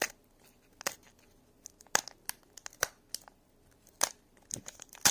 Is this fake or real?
real